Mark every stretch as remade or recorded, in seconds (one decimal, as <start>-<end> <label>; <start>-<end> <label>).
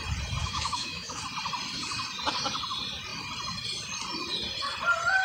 0.0-0.4 recorded; 0.4-1.2 remade; 1.2-5.2 recorded